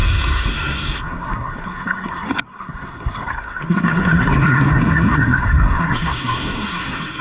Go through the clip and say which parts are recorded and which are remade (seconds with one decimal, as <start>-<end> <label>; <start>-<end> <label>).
0.0-7.2 remade